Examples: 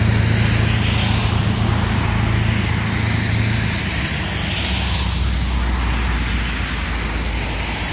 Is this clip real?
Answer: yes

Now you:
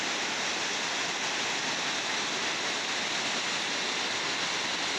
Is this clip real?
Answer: yes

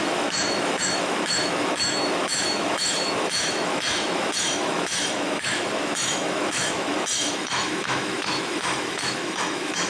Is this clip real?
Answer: no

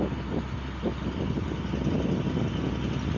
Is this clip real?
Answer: yes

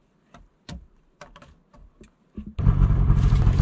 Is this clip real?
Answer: no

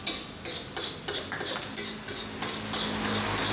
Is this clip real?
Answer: yes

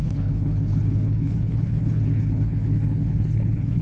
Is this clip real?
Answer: no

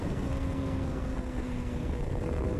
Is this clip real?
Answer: no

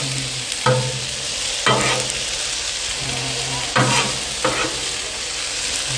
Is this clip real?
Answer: yes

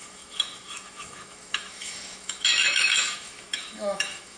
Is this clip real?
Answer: no